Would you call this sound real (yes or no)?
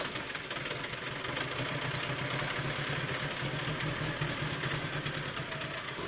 yes